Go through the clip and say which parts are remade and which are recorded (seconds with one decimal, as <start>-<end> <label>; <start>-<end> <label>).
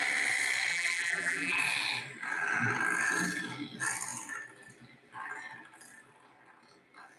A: 0.0-0.7 recorded; 0.7-1.6 remade; 1.6-7.2 recorded